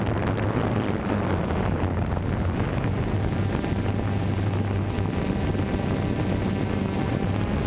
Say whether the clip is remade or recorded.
recorded